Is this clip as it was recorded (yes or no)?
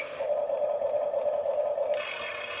yes